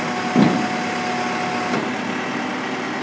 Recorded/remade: recorded